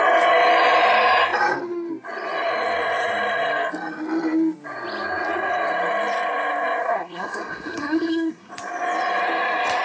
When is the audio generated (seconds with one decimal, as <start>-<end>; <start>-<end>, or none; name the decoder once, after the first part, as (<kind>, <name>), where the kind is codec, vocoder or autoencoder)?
6.8-8.5 (codec, SNAC)